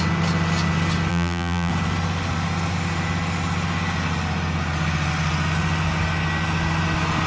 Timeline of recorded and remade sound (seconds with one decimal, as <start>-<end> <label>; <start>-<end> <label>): 0.0-1.1 recorded; 1.1-1.7 remade; 1.7-7.3 recorded